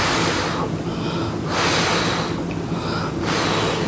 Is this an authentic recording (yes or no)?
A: yes